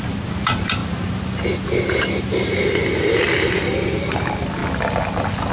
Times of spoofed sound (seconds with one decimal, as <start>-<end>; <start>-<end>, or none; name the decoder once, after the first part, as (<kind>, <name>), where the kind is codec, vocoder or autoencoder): none